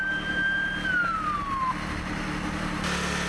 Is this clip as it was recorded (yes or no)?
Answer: yes